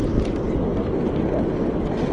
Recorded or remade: recorded